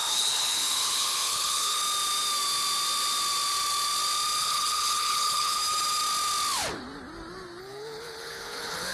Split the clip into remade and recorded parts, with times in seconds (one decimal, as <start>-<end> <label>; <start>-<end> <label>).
0.0-1.8 remade; 1.8-4.4 recorded; 4.4-5.6 remade; 5.6-7.6 recorded; 7.6-8.9 remade